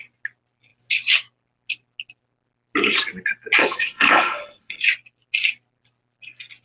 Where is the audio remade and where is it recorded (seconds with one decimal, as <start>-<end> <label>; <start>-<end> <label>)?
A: 0.0-3.6 recorded; 3.6-4.8 remade; 4.8-6.6 recorded